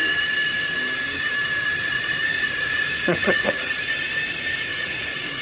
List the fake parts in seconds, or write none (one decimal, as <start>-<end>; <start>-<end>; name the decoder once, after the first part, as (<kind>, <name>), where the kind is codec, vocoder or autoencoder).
1.8-3.7 (vocoder, Vocos); 4.7-5.4